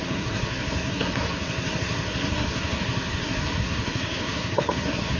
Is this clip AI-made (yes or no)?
yes